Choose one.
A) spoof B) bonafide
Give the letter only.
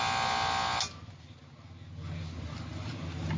B